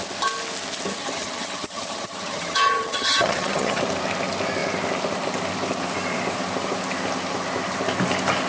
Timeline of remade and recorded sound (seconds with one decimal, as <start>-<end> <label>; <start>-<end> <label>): 0.0-1.0 recorded; 1.0-3.8 remade; 3.8-8.5 recorded